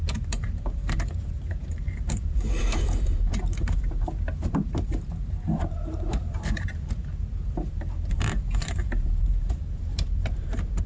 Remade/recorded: remade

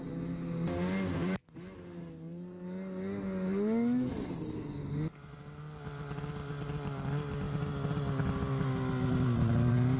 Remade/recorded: recorded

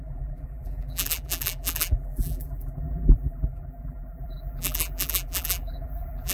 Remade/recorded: remade